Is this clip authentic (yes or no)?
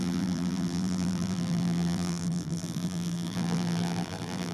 no